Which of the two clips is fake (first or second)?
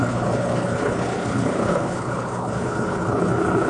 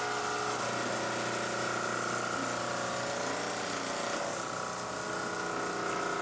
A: first